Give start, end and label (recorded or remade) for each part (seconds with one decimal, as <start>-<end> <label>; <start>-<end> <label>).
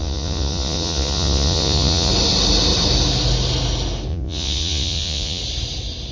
0.0-2.1 remade; 2.1-4.1 recorded; 4.1-5.4 remade; 5.4-6.1 recorded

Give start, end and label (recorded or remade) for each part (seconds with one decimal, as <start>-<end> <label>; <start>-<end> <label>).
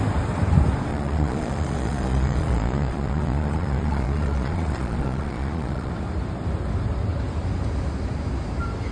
0.0-0.9 recorded; 0.9-5.9 remade; 5.9-8.9 recorded